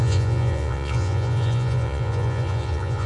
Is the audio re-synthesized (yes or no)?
yes